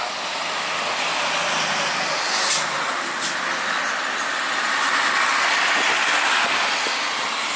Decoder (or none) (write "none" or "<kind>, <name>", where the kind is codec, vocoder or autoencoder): none